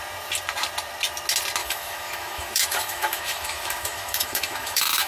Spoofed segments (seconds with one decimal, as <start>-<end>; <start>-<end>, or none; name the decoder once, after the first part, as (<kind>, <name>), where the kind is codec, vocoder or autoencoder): 1.6-5.1 (autoencoder, DAC-VAE)